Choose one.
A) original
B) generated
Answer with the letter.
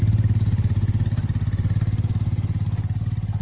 A